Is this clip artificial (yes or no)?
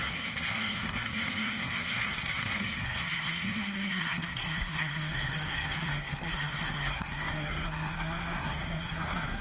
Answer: yes